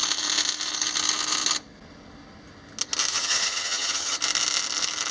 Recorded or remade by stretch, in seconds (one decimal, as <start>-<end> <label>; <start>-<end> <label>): 0.0-3.1 recorded; 3.1-4.2 remade; 4.2-5.1 recorded